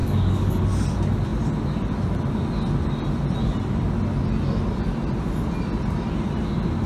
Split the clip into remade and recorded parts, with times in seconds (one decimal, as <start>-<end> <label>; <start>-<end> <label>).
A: 0.0-0.6 remade; 0.6-6.9 recorded